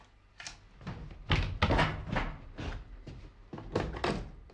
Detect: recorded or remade recorded